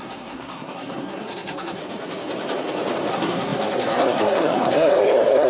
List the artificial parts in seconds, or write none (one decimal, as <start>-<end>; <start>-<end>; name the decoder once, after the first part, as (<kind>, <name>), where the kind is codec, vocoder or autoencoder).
0.0-1.8 (codec, SNAC); 3.1-5.5